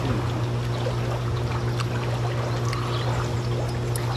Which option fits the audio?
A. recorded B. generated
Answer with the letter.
A